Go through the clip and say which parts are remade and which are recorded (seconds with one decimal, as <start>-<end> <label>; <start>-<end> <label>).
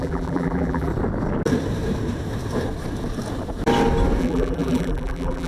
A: 0.0-0.9 remade; 0.9-4.2 recorded; 4.2-5.5 remade